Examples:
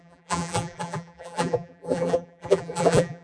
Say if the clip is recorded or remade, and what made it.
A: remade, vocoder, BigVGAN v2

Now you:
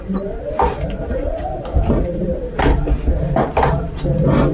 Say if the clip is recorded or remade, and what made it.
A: remade, vocoder, BigVGAN v2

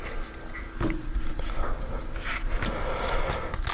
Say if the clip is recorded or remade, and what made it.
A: recorded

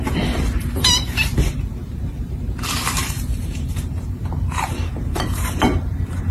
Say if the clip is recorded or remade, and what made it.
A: remade, vocoder, BigVGAN v2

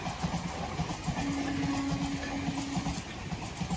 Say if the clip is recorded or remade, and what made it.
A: recorded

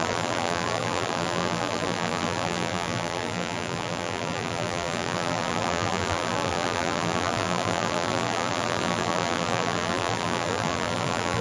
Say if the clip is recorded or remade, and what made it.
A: remade, vocoder, BigVGAN v2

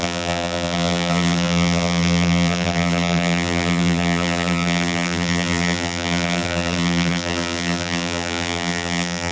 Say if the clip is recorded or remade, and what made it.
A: remade, vocoder, BigVGAN v2